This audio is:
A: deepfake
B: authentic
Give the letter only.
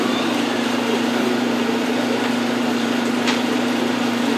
A